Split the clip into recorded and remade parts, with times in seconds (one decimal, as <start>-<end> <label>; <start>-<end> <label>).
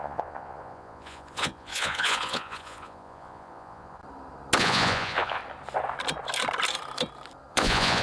0.0-4.0 remade; 4.0-4.6 recorded; 4.6-5.4 remade; 5.4-7.5 recorded; 7.5-8.0 remade